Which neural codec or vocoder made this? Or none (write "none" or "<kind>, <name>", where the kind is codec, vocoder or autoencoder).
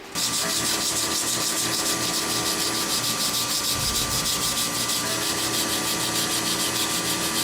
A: none